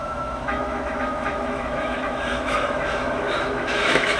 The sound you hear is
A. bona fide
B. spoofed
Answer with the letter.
B